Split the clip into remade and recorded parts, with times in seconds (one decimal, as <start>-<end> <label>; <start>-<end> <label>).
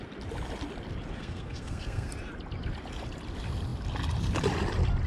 0.0-1.2 recorded; 1.2-2.1 remade; 2.1-5.1 recorded